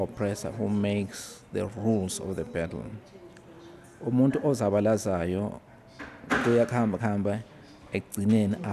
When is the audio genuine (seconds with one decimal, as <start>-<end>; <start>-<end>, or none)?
0.0-6.5; 7.0-8.7